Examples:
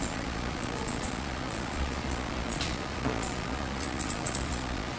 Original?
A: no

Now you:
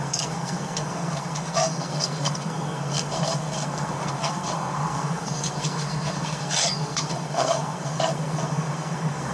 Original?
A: no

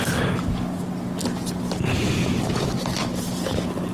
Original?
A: yes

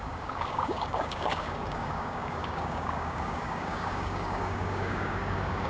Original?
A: no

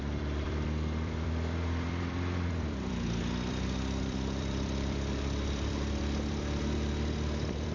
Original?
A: no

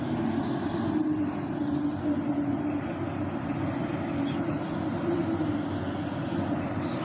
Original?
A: yes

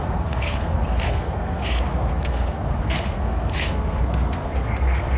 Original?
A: no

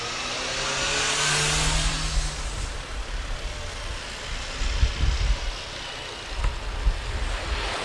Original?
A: yes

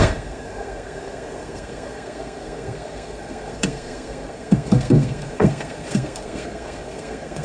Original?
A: no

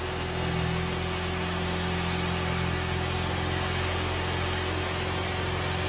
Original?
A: yes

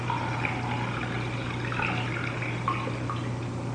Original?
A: yes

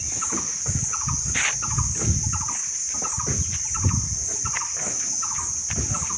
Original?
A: yes